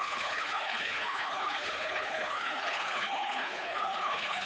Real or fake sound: fake